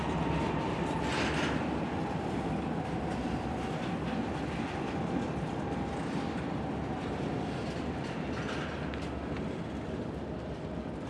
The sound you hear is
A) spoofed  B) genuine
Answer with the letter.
B